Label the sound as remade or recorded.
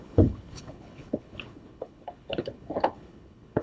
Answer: remade